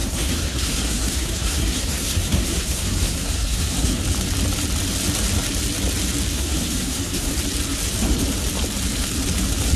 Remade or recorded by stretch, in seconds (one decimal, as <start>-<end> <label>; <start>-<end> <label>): 0.0-4.0 remade; 4.0-6.3 recorded; 6.3-7.3 remade; 7.3-9.8 recorded